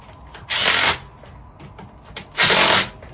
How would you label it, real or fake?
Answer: real